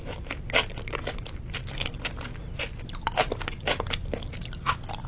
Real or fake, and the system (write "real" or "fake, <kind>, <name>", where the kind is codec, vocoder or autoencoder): real